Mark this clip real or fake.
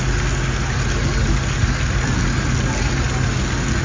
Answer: real